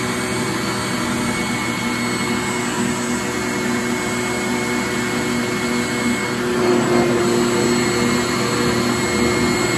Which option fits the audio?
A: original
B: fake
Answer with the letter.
A